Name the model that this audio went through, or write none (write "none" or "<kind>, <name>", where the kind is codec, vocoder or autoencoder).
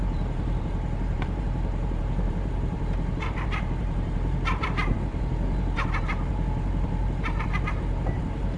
vocoder, BigVGAN v2